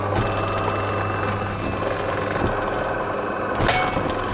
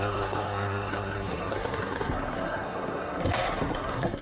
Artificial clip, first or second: second